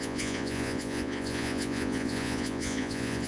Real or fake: fake